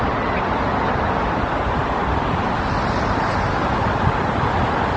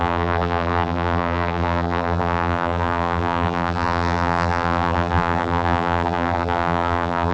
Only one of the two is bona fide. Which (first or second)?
first